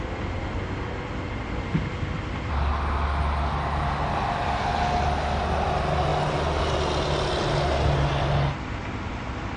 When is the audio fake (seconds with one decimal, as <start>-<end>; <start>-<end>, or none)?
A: none